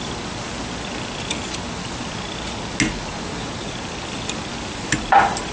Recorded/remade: recorded